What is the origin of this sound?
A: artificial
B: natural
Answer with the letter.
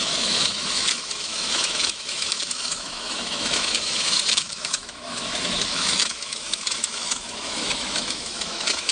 A